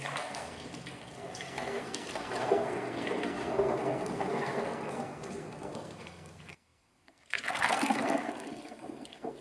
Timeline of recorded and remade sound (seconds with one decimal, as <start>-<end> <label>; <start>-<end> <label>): 0.0-9.4 remade